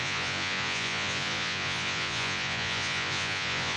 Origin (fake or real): fake